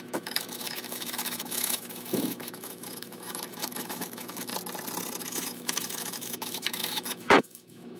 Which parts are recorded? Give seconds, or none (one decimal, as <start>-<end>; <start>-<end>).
4.5-5.2